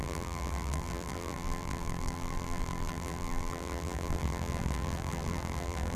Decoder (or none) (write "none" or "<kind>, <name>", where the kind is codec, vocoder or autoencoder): vocoder, BigVGAN v2